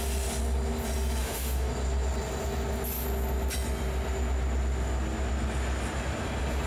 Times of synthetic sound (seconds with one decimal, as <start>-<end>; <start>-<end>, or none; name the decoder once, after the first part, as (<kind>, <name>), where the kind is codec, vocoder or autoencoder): 1.2-1.7 (autoencoder, DAC-VAE)